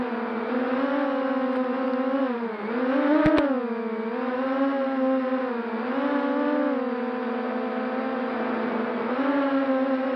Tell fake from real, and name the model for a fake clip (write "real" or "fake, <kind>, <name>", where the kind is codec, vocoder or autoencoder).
real